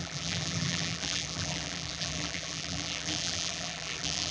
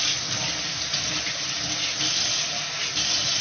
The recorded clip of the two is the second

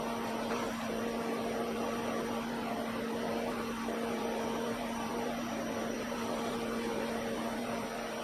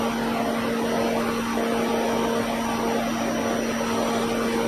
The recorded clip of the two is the second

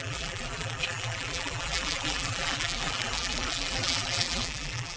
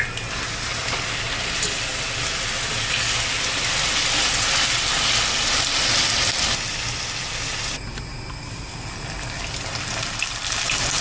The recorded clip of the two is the second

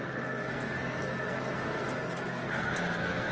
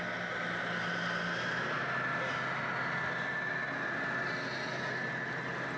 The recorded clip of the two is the second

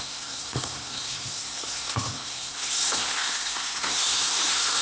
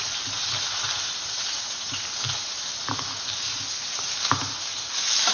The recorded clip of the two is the second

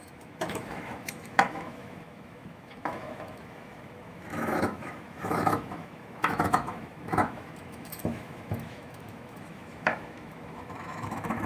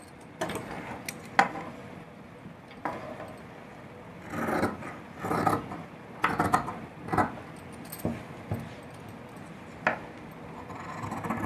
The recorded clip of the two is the second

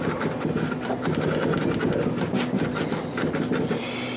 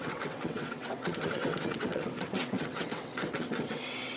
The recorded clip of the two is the first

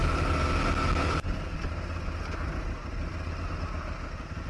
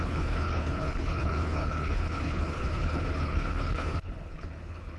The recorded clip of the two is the first